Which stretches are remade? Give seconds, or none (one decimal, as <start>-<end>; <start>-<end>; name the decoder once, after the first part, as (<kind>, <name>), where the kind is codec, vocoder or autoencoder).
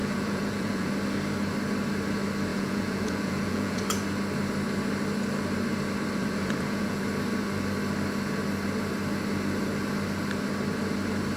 0.0-0.9 (vocoder, Vocos); 2.5-3.8; 6.2-7.0